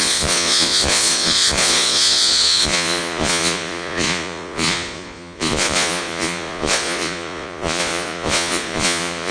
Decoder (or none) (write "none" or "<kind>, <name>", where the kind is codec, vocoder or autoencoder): vocoder, Vocos